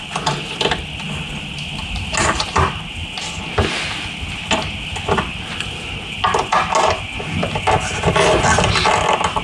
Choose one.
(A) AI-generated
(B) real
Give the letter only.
B